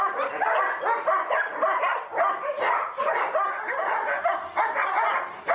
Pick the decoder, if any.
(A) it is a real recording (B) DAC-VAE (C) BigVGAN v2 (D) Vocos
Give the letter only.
A